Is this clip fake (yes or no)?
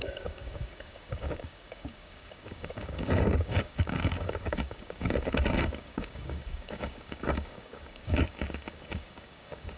yes